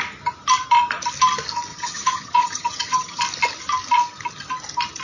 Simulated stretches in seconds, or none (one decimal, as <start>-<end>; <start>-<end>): 1.7-3.2